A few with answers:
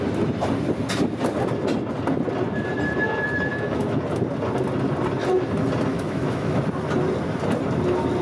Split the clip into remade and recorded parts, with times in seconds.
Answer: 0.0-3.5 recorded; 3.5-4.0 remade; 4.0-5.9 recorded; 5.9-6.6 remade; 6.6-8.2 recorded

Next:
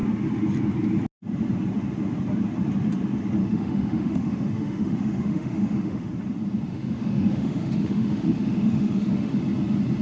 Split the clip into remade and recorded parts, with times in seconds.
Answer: 0.0-3.4 recorded; 3.4-6.1 remade; 6.1-6.7 recorded; 6.7-9.4 remade; 9.4-10.0 recorded

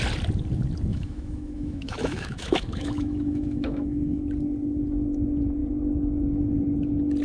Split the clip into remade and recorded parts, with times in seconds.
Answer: 0.0-0.9 recorded; 0.9-4.2 remade; 4.2-7.2 recorded

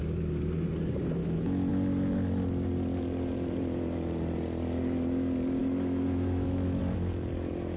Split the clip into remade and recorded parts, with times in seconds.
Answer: 0.0-1.2 recorded; 1.2-1.7 remade; 1.7-5.6 recorded; 5.6-6.8 remade; 6.8-7.8 recorded

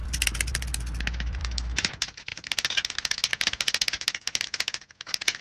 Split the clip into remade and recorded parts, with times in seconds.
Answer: 0.0-1.4 recorded; 1.4-1.9 remade; 1.9-5.4 recorded

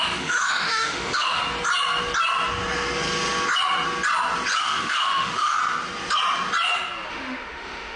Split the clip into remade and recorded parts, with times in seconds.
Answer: 0.0-1.4 remade; 1.4-4.6 recorded; 4.6-5.6 remade; 5.6-7.1 recorded; 7.1-8.0 remade